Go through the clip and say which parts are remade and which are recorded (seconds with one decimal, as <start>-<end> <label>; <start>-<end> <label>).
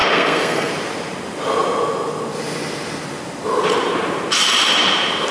0.0-0.7 remade; 0.7-5.3 recorded